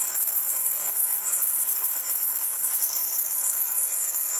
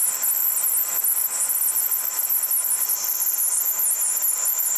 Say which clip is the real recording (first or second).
second